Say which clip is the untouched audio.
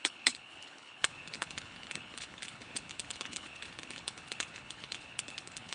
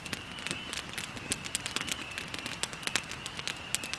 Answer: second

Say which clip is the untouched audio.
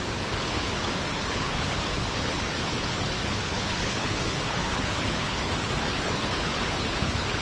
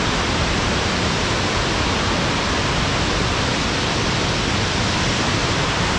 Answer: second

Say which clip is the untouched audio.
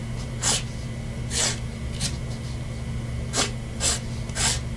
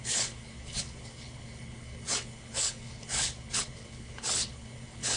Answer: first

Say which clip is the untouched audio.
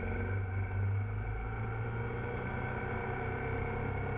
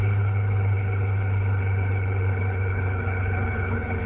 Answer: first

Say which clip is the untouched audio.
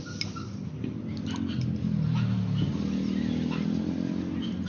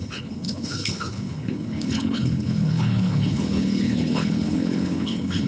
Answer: first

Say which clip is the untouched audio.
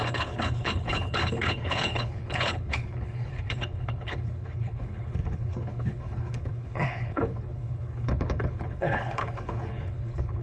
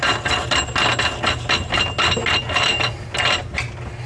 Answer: second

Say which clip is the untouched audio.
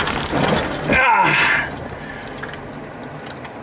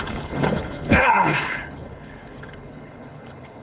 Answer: first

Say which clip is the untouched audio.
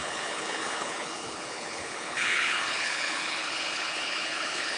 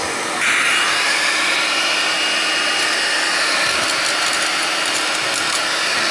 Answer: second